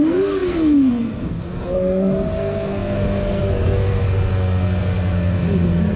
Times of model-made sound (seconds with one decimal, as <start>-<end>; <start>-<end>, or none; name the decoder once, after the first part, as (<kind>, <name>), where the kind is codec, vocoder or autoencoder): 0.0-6.0 (codec, SNAC)